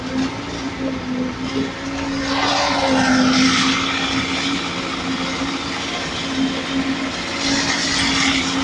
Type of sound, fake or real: real